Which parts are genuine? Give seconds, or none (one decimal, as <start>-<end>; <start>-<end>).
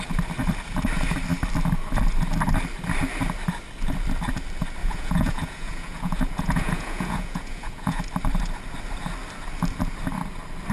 0.0-4.8; 8.0-10.7